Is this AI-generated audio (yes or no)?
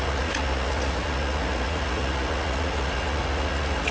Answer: yes